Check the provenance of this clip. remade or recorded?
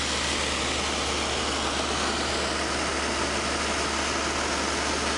recorded